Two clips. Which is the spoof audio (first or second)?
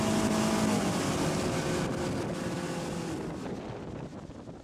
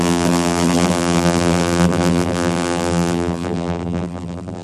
second